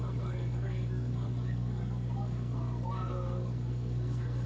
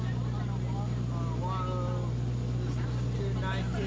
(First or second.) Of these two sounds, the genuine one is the second